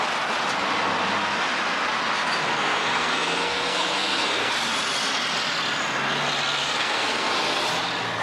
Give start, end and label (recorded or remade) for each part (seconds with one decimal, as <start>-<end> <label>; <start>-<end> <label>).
0.0-2.4 recorded; 2.4-4.5 remade; 4.5-6.6 recorded; 6.6-7.6 remade; 7.6-8.2 recorded